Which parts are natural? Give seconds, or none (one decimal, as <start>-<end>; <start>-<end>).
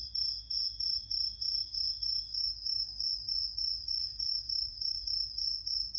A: 0.0-1.6; 3.1-4.3; 5.0-6.0